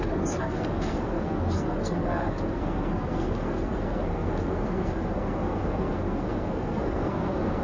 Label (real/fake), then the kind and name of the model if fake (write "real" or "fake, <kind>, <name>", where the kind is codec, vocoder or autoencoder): fake, codec, SNAC